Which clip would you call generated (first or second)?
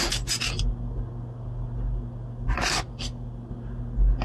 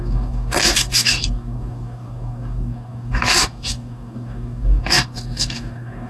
second